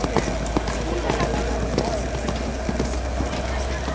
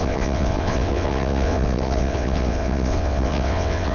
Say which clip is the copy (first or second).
second